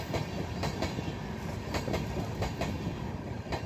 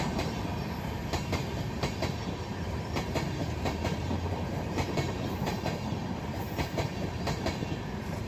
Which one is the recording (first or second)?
first